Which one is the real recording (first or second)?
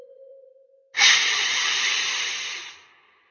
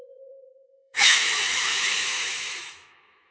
first